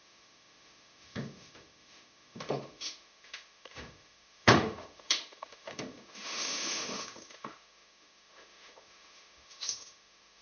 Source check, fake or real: fake